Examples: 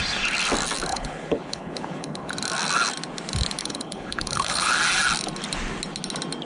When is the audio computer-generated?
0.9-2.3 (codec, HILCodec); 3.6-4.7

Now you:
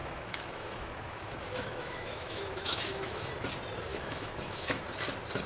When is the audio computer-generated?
0.0-3.3 (autoencoder, DAC-VAE); 3.9-4.8

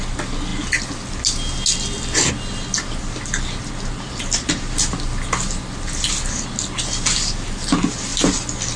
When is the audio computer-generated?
none

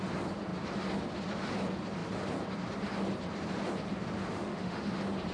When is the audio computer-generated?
4.3-4.8 (autoencoder, DAC-VAE)

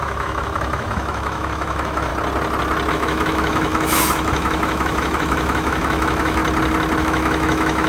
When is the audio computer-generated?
0.0-2.1 (autoencoder, DAC-VAE); 2.9-6.4; 7.0-7.9

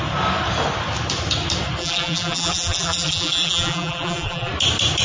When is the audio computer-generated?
1.8-4.5 (vocoder, BigVGAN v2)